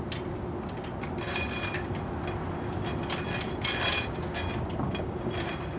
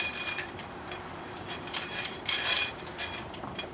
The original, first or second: first